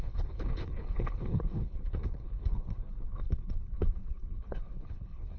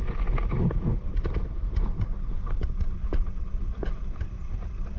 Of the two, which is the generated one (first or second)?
first